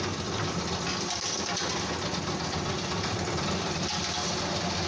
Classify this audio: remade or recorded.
recorded